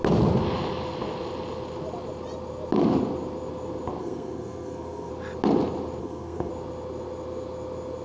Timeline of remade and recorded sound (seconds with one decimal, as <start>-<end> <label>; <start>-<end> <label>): 0.0-4.0 recorded; 4.0-5.1 remade; 5.1-6.0 recorded; 6.0-6.5 remade; 6.5-8.0 recorded